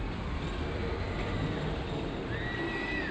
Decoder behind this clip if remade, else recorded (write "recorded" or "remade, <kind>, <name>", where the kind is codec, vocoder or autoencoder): recorded